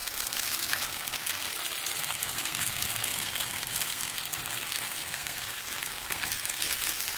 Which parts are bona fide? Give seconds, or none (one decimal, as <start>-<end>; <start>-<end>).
1.5-2.0